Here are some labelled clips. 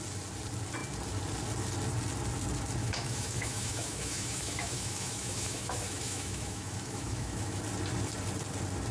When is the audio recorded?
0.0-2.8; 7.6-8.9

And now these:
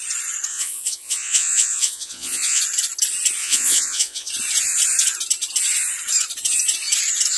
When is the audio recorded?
0.0-0.5; 2.6-3.4; 4.3-7.4

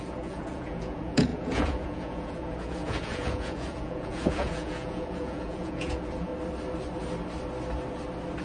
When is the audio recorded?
6.3-8.4

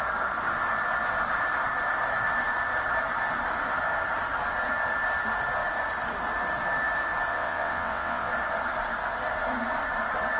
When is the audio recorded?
0.0-7.3; 8.3-10.4

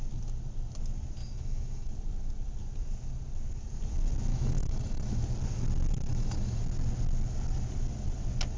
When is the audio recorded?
0.0-1.2; 1.9-4.3; 5.1-6.1; 6.6-8.6

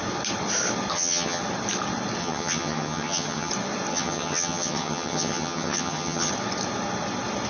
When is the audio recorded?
0.0-0.9; 1.4-2.2; 3.5-3.9; 6.3-7.5

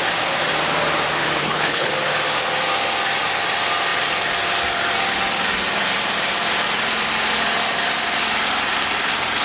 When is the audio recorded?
0.0-1.4; 1.9-9.4

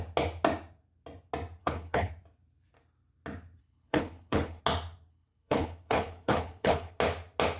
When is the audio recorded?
0.0-1.6; 2.1-3.6; 4.6-5.1; 7.0-7.6